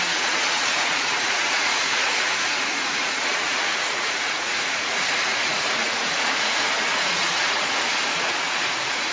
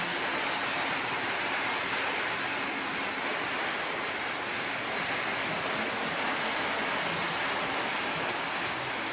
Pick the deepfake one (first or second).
first